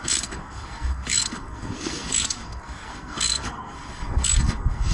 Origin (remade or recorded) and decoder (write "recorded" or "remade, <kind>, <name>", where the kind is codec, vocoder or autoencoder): remade, codec, SNAC